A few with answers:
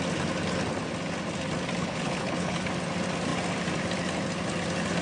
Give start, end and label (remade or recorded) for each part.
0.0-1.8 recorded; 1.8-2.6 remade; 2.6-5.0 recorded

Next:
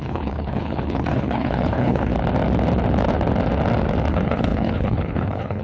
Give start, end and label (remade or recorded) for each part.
0.0-2.1 remade; 2.1-4.1 recorded; 4.1-5.6 remade